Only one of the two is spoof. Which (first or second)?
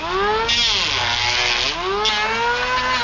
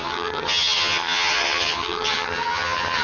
second